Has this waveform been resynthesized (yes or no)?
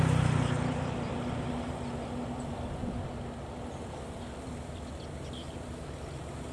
no